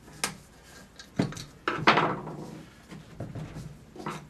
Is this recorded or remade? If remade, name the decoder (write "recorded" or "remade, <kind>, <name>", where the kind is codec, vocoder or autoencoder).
recorded